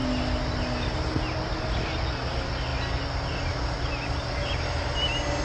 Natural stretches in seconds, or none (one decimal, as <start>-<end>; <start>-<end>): 0.0-5.4